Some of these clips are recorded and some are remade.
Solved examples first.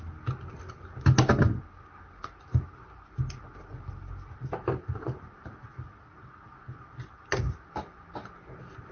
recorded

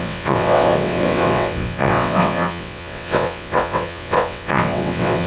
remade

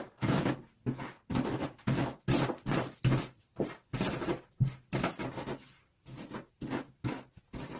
recorded